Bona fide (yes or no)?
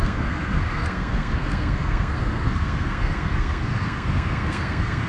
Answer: no